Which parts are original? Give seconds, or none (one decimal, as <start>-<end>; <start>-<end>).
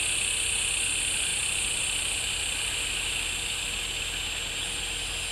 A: 0.0-5.3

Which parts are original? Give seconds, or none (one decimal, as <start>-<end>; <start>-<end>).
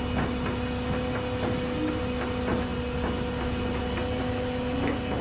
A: 0.0-5.2